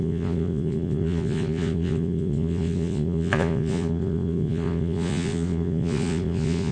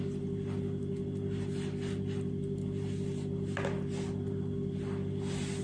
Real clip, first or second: second